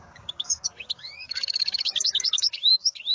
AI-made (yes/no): yes